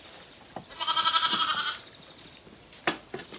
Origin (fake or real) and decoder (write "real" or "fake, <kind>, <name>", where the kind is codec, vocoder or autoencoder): real